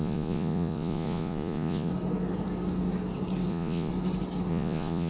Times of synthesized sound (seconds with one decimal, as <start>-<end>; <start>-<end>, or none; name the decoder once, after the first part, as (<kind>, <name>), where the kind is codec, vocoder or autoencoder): 0.0-1.9 (vocoder, Vocos); 3.5-3.9; 4.5-5.1

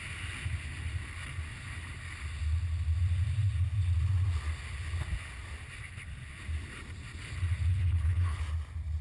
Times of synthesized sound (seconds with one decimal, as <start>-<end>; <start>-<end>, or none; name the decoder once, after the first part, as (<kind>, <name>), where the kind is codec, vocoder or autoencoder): 7.7-8.4 (codec, HILCodec)